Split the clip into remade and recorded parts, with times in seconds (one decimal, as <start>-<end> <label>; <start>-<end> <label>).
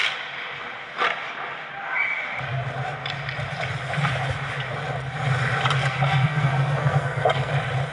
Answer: 0.0-5.8 recorded; 5.8-7.5 remade; 7.5-7.9 recorded